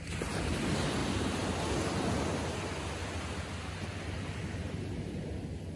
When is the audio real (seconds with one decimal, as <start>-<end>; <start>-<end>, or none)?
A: 0.0-1.0; 2.5-3.0